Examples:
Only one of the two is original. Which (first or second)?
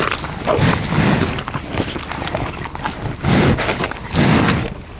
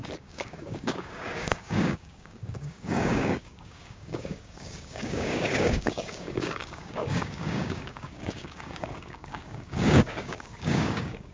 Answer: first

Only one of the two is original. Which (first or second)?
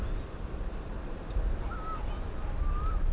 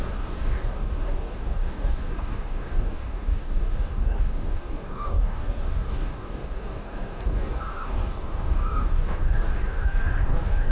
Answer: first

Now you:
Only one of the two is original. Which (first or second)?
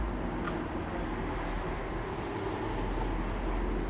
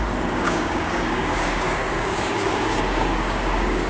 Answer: first